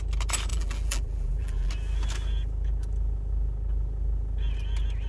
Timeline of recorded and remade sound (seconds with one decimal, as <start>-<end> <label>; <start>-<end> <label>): 0.0-0.5 recorded; 0.5-1.7 remade; 1.7-5.1 recorded